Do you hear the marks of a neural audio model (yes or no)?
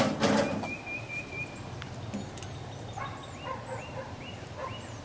no